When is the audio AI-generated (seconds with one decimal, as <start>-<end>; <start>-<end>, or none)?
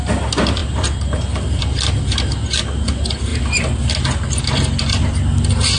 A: none